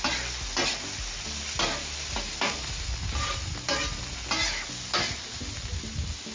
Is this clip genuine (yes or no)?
yes